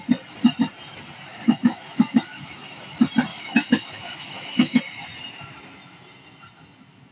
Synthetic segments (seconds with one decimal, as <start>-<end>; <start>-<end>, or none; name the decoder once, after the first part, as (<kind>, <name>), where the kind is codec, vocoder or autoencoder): 1.3-2.8 (autoencoder, DAC-VAE); 3.3-4.8